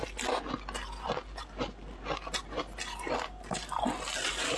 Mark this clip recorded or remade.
recorded